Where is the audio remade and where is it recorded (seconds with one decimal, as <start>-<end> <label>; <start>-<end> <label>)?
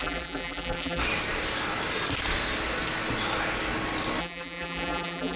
0.0-1.0 remade; 1.0-4.2 recorded; 4.2-5.4 remade